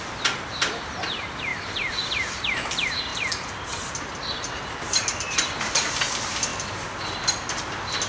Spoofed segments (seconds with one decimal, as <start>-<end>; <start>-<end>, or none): 1.5-2.4